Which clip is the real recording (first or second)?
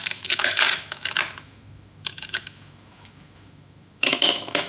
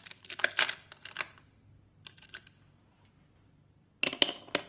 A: second